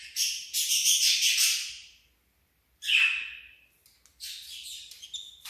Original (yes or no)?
yes